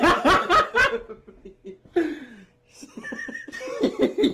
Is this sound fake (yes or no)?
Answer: no